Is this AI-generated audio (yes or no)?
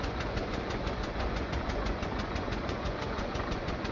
yes